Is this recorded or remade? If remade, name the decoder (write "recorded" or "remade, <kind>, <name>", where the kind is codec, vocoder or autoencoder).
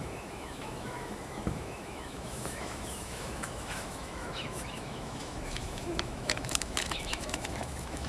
remade, autoencoder, DAC-VAE